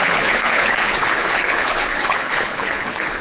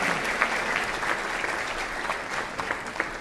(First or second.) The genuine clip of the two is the second